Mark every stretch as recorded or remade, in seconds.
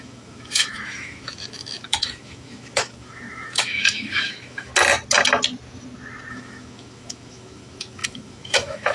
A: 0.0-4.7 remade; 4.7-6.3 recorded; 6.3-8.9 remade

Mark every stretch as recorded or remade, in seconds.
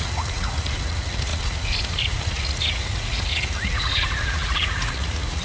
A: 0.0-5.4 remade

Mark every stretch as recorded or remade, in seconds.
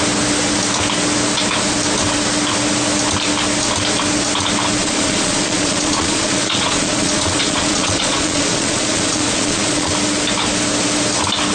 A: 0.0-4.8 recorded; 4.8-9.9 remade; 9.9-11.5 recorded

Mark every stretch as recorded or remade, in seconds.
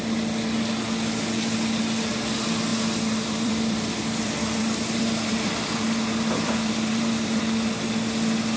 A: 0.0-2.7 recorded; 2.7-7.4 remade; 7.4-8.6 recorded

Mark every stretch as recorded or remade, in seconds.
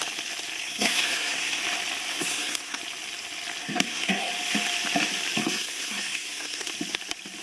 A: 0.0-0.6 recorded; 0.6-1.6 remade; 1.6-2.1 recorded; 2.1-2.8 remade; 2.8-3.6 recorded; 3.6-4.3 remade; 4.3-5.4 recorded; 5.4-6.7 remade; 6.7-7.4 recorded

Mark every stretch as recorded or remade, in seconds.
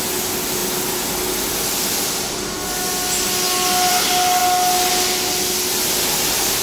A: 0.0-6.6 recorded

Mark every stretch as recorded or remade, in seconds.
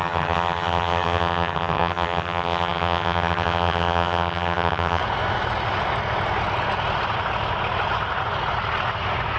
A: 0.0-5.0 remade; 5.0-9.4 recorded